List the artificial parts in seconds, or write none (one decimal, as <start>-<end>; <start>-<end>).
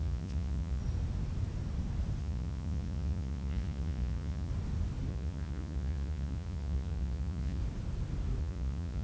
0.0-0.8; 2.2-4.5; 5.1-7.6; 8.4-9.0